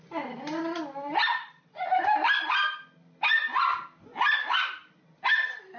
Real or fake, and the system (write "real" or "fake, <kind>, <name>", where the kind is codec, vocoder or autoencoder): real